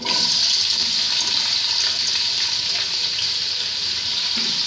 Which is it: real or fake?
real